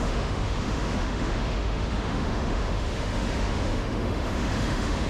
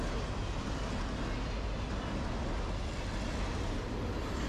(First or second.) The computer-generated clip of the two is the first